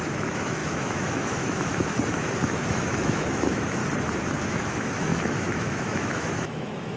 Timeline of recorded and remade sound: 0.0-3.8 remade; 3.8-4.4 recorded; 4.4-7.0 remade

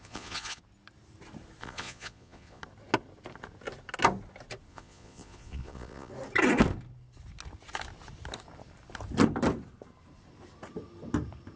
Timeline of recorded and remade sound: 0.0-0.6 remade; 0.6-1.6 recorded; 1.6-2.6 remade; 2.6-4.7 recorded; 4.7-6.1 remade; 6.1-11.6 recorded

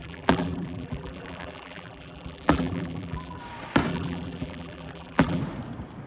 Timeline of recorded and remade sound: 0.0-3.4 remade; 3.4-3.9 recorded; 3.9-5.4 remade; 5.4-6.1 recorded

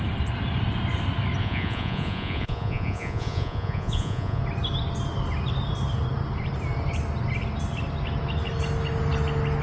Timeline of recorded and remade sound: 0.0-1.4 recorded; 1.4-4.4 remade; 4.4-9.6 recorded

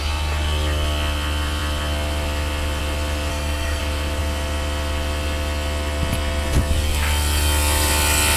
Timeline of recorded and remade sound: 0.0-3.3 recorded; 3.3-3.8 remade; 3.8-8.4 recorded